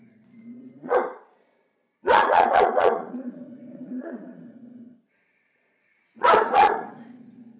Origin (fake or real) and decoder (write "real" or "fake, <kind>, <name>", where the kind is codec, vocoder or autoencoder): fake, vocoder, Vocos